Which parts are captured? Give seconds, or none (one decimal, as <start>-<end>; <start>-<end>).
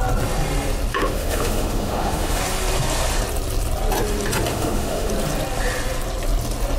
0.0-0.9; 2.4-4.5; 5.1-6.8